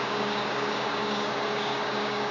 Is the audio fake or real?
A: fake